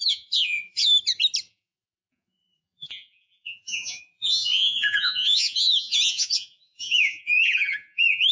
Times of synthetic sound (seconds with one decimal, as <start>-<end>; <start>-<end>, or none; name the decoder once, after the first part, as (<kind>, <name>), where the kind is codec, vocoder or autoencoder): 0.0-0.9 (vocoder, Vocos); 1.5-8.3